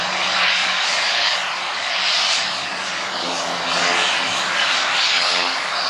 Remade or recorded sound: remade